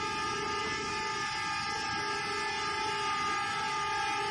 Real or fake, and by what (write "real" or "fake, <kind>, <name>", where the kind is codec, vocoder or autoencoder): real